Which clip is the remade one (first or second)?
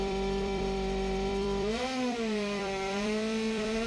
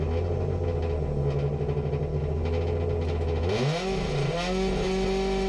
first